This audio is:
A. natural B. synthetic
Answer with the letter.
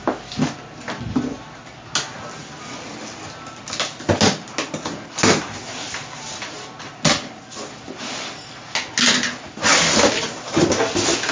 A